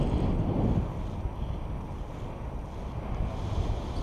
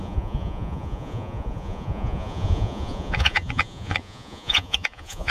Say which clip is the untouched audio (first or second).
first